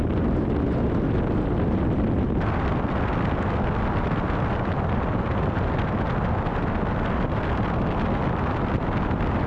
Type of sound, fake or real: real